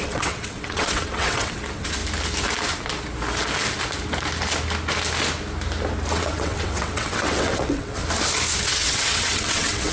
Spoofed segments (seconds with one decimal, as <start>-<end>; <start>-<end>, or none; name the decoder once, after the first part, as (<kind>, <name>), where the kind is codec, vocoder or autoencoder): 0.0-2.0 (vocoder, WaveNeXt); 6.1-8.0; 8.7-9.9